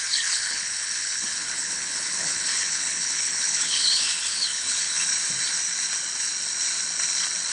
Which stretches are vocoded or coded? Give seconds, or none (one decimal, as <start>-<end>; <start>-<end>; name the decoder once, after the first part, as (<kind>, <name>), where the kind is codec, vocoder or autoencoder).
0.0-5.1 (codec, HILCodec)